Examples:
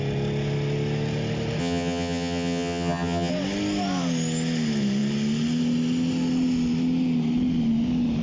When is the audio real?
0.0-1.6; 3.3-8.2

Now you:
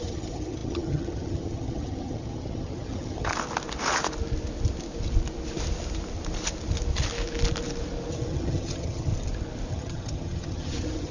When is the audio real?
3.3-8.1; 9.1-9.7

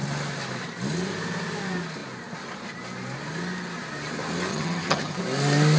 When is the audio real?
0.0-4.5; 5.2-5.8

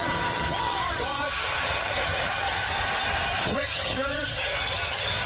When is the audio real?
2.7-3.5

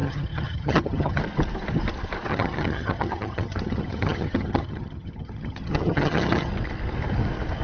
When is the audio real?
1.2-2.3; 6.5-7.6

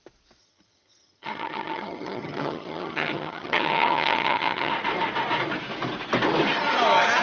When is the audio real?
0.0-0.4; 4.7-7.2

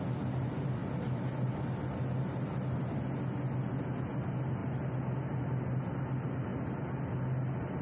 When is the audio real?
0.0-7.8